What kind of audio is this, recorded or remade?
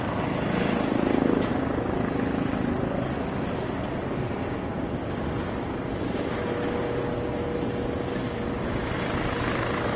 recorded